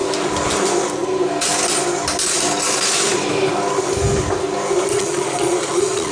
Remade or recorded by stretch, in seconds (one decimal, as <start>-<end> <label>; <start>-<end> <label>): 0.0-4.9 recorded; 4.9-6.1 remade